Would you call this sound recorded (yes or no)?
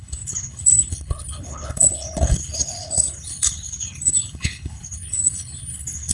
no